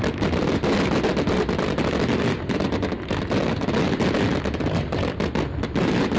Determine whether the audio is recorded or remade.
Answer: recorded